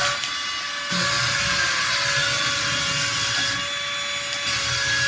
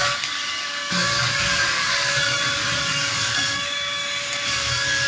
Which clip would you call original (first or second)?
first